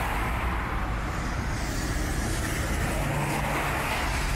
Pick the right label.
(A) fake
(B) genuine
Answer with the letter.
B